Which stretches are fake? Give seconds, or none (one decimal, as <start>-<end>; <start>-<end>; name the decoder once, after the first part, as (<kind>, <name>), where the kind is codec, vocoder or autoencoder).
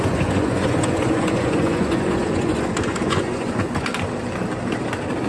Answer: 0.0-3.9 (vocoder, Vocos)